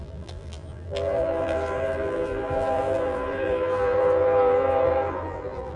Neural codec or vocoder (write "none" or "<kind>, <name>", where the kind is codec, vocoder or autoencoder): vocoder, BigVGAN v2